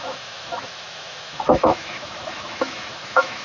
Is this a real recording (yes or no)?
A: no